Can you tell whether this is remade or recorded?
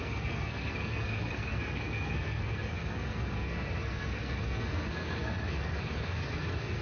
remade